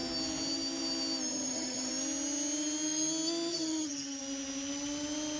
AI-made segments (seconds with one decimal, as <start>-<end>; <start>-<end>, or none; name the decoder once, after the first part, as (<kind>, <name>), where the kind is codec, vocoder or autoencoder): 1.3-1.9 (vocoder, HiFi-GAN); 3.5-4.2

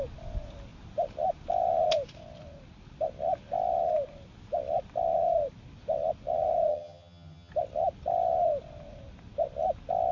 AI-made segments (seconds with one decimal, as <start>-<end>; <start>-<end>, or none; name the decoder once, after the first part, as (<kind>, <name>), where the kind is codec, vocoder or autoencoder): 6.7-7.5 (vocoder, HiFi-GAN)